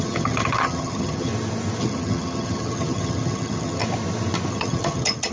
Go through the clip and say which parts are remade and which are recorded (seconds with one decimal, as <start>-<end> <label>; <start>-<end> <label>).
0.0-1.3 remade; 1.3-1.8 recorded; 1.8-3.8 remade; 3.8-4.5 recorded; 4.5-5.3 remade